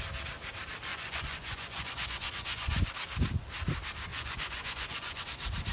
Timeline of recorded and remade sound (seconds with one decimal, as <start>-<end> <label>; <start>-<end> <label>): 0.0-0.9 recorded; 0.9-2.9 remade; 2.9-4.1 recorded; 4.1-5.2 remade; 5.2-5.7 recorded